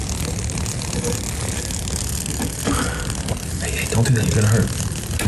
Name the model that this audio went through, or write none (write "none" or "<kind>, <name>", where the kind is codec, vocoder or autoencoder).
none